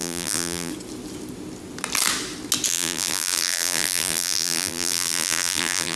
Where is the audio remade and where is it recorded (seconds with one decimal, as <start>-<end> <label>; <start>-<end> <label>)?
0.0-0.7 remade; 0.7-2.7 recorded; 2.7-6.0 remade